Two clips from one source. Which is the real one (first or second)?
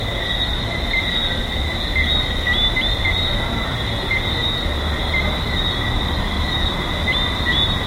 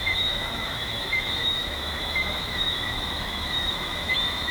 first